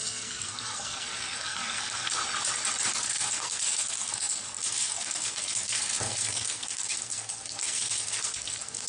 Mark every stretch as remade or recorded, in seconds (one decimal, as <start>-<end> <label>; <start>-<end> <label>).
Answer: 0.0-2.2 remade; 2.2-2.9 recorded; 2.9-8.9 remade